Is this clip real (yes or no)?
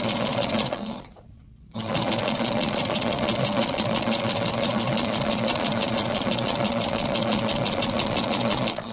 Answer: no